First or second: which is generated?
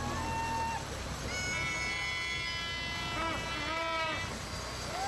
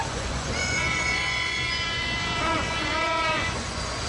second